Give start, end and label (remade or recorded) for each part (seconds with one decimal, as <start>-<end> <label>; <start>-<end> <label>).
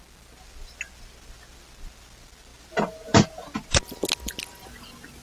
0.0-5.2 recorded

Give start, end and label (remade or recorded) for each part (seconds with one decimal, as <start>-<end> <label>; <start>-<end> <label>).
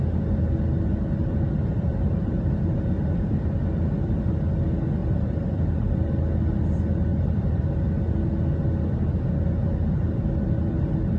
0.0-1.2 recorded; 1.2-3.6 remade; 3.6-5.0 recorded; 5.0-6.1 remade; 6.1-7.1 recorded; 7.1-8.0 remade; 8.0-11.2 recorded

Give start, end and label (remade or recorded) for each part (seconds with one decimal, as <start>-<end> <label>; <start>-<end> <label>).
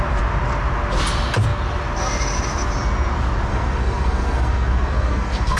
0.0-3.5 recorded; 3.5-5.6 remade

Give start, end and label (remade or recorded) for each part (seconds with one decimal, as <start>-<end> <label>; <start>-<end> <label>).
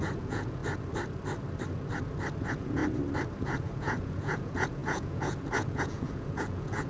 0.0-0.6 remade; 0.6-2.4 recorded; 2.4-2.8 remade; 2.8-3.4 recorded; 3.4-6.9 remade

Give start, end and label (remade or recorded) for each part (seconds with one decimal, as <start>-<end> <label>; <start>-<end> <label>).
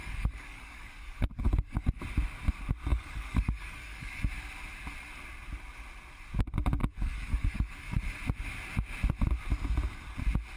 0.0-2.0 remade; 2.0-2.9 recorded; 2.9-4.2 remade; 4.2-6.8 recorded; 6.8-8.0 remade; 8.0-10.6 recorded